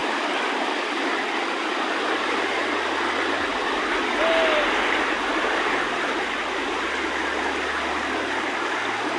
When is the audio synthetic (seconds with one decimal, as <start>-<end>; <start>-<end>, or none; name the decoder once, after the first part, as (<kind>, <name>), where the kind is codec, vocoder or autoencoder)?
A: 0.0-2.6 (vocoder, BigVGAN v2); 3.5-9.2